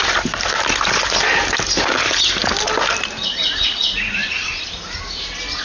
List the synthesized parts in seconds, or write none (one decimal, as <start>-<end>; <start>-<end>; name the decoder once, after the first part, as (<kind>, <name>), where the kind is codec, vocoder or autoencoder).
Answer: none